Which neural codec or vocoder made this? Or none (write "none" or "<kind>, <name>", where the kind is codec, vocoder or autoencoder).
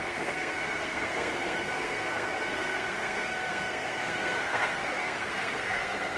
codec, SNAC